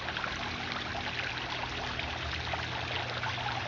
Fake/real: real